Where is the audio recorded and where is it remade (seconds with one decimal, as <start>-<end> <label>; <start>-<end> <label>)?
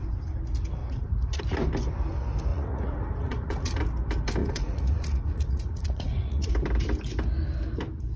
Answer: 0.0-0.8 recorded; 0.8-1.4 remade; 1.4-2.5 recorded; 2.5-3.8 remade; 3.8-4.4 recorded; 4.4-6.5 remade; 6.5-8.2 recorded